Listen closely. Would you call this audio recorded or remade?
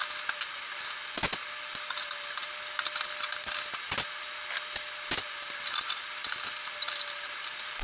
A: recorded